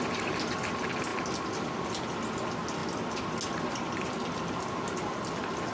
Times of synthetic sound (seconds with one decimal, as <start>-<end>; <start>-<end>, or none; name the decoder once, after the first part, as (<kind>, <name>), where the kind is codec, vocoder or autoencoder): none